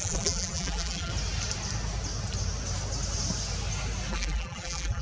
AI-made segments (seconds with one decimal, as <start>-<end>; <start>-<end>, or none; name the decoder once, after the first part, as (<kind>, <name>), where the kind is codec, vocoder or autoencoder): 0.0-1.1 (vocoder, BigVGAN v2); 4.1-5.0